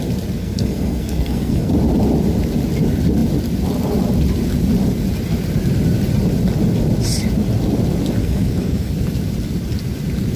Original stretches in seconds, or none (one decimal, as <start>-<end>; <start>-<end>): 0.0-0.4; 1.7-8.2; 8.9-10.4